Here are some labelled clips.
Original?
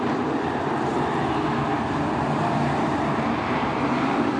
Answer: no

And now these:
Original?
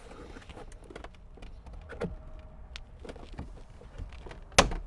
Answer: yes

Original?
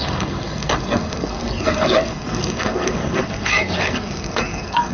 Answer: no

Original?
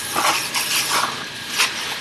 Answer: yes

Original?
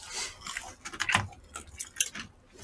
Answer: yes